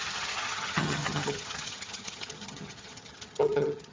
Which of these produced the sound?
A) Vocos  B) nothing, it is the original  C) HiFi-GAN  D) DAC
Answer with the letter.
C